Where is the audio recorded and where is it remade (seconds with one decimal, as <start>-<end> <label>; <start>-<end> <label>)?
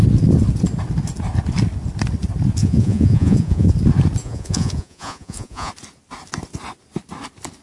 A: 0.0-2.6 recorded; 2.6-3.7 remade; 3.7-4.2 recorded; 4.2-5.7 remade; 5.7-7.6 recorded